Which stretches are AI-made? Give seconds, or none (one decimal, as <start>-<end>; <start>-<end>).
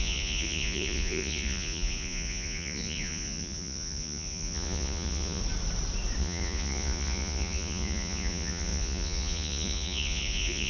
0.0-5.4; 6.2-10.7